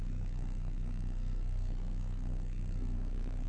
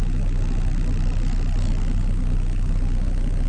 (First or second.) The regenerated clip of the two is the first